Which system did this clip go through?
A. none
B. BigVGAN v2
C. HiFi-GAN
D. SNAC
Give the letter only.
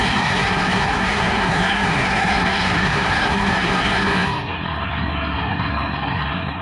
D